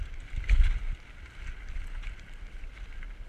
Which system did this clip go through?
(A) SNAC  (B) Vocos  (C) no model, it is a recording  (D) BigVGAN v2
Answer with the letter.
C